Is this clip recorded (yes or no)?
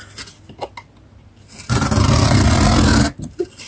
yes